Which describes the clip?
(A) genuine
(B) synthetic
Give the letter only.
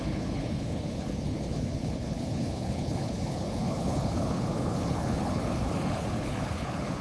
B